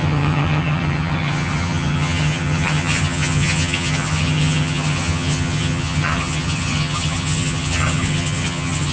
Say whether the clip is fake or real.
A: fake